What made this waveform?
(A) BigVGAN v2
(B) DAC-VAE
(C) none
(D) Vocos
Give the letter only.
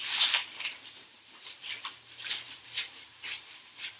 A